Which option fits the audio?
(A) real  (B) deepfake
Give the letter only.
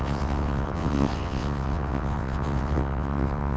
B